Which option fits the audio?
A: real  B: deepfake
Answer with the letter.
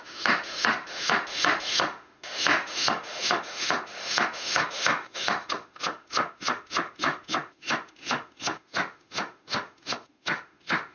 B